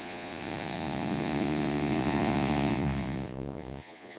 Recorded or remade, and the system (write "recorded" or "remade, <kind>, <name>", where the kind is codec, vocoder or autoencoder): remade, vocoder, Vocos